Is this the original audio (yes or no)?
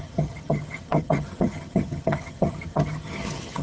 no